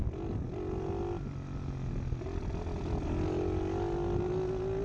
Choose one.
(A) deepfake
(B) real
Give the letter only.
B